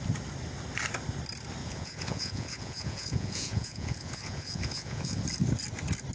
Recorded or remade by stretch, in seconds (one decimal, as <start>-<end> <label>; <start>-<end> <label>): 0.0-1.6 recorded; 1.6-5.2 remade; 5.2-6.1 recorded